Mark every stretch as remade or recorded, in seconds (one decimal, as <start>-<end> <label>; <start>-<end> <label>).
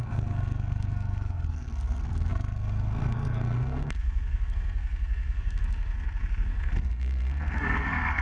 0.0-8.2 remade